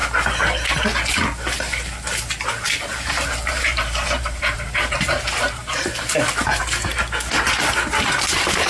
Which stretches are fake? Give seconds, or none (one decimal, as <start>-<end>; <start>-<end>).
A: 2.9-6.6